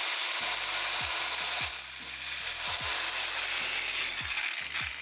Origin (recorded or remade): recorded